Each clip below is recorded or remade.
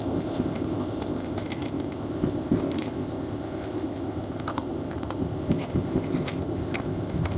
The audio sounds remade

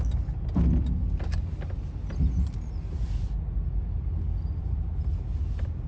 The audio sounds recorded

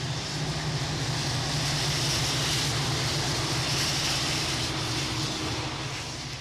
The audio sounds recorded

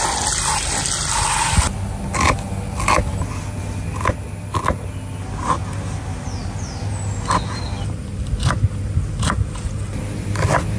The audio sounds recorded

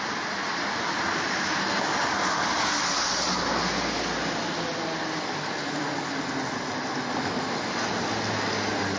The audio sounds recorded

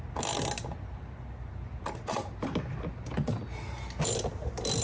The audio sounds recorded